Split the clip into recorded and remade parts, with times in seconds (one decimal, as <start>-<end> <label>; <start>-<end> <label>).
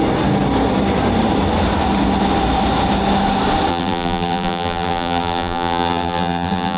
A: 0.0-3.7 recorded; 3.7-6.8 remade